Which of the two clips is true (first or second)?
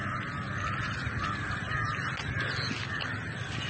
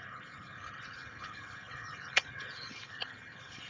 first